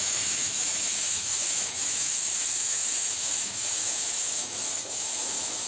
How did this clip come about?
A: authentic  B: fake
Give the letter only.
B